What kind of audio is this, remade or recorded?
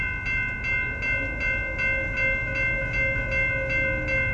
recorded